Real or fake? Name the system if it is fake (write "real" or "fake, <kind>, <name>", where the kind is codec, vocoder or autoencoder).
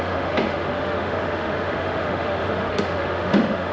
fake, autoencoder, DAC-VAE